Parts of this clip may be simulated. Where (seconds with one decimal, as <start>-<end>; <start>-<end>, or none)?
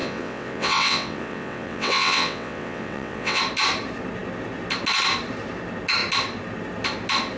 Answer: 0.0-3.4